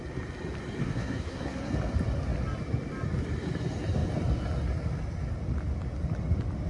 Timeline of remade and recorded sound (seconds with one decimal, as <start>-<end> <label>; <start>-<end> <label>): 0.0-0.8 recorded; 0.8-1.7 remade; 1.7-6.7 recorded